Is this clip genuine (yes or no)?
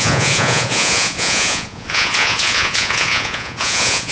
no